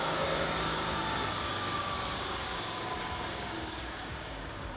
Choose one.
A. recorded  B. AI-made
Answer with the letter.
B